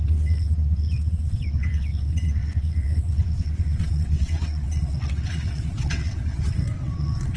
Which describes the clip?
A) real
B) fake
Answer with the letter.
B